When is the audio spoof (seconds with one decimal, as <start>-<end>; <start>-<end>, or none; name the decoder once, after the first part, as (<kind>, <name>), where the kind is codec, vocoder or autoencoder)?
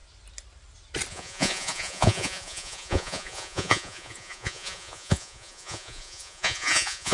1.1-7.1 (vocoder, Vocos)